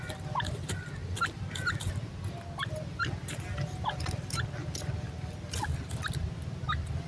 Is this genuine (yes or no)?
yes